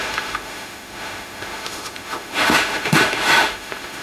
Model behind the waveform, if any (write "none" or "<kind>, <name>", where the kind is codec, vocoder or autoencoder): autoencoder, DAC-VAE